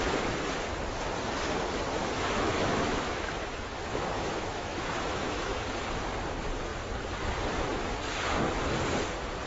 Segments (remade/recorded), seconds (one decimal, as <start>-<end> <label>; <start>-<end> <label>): 0.0-2.0 recorded; 2.0-5.6 remade; 5.6-9.5 recorded